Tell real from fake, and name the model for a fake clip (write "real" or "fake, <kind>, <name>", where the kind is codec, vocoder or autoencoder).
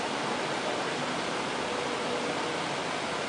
real